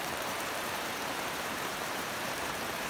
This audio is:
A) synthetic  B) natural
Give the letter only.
A